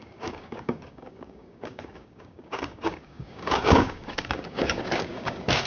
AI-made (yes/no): yes